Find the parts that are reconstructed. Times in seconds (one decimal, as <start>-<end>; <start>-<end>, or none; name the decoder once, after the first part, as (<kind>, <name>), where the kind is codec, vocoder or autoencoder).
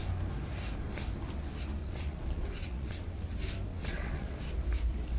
1.8-3.3 (vocoder, WaveNeXt); 3.7-4.4